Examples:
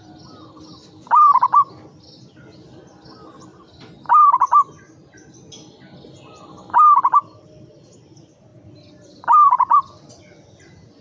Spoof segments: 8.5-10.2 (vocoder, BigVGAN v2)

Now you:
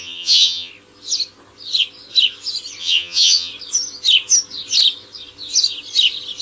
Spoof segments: 0.0-0.7 (vocoder, HiFi-GAN); 2.8-3.5

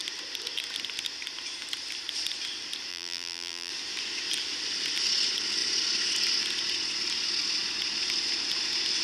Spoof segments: 2.9-3.7 (vocoder, BigVGAN v2)

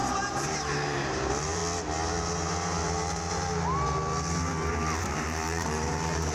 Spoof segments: 0.0-1.6 (vocoder, BigVGAN v2); 5.0-6.3

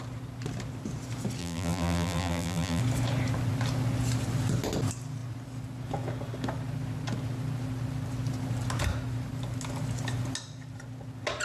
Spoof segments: 1.4-2.8 (vocoder, BigVGAN v2)

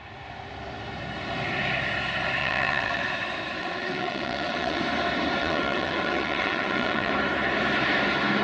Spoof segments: 2.4-3.0 (vocoder, WaveNeXt); 3.6-4.8; 5.4-7.1

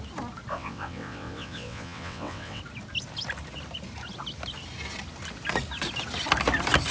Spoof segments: 0.5-2.6 (vocoder, WaveNeXt)

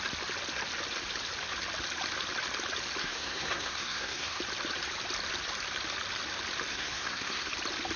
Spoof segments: 3.0-4.4 (codec, SNAC); 6.7-7.5